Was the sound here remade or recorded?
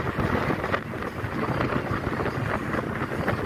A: recorded